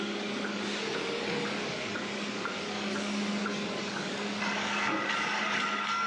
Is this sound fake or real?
fake